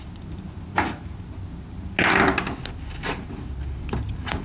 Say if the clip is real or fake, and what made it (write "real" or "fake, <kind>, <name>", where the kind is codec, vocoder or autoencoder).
real